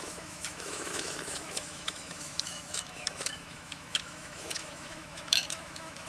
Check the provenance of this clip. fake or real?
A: fake